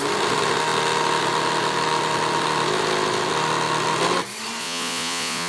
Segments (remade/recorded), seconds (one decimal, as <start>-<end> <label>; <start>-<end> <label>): 0.0-4.6 recorded; 4.6-5.5 remade